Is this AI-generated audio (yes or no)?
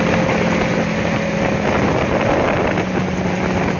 no